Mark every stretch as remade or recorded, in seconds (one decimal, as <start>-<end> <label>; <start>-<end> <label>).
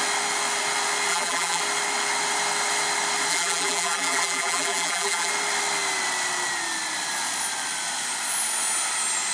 0.0-1.1 recorded; 1.1-1.6 remade; 1.6-3.3 recorded; 3.3-5.3 remade; 5.3-9.3 recorded